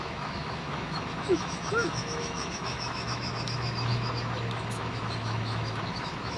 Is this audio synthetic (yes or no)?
yes